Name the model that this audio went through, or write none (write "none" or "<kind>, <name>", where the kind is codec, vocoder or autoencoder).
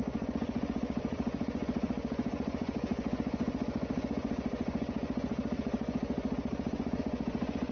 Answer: vocoder, Vocos